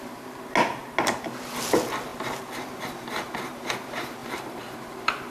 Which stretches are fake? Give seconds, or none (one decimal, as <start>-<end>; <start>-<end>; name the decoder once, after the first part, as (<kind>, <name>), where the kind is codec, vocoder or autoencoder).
4.2-5.3 (vocoder, BigVGAN v2)